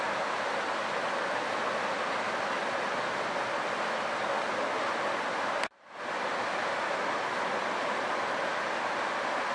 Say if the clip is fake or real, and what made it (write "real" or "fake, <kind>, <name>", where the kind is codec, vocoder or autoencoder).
real